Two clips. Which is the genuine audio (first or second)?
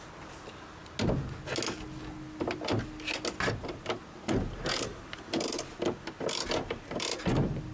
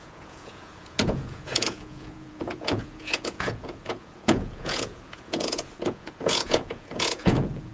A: first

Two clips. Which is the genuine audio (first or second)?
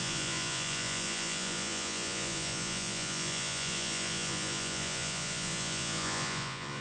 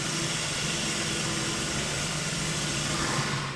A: second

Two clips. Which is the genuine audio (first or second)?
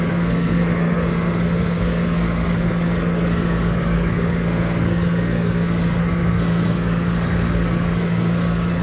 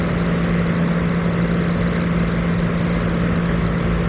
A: second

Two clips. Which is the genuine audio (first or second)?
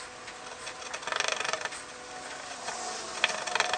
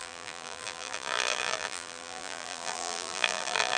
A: first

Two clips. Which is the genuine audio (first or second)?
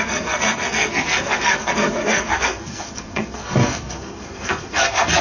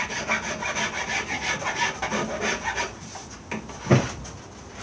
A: second